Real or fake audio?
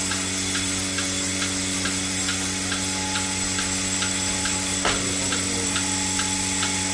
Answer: real